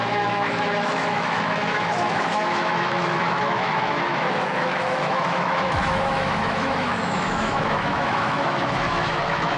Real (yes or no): no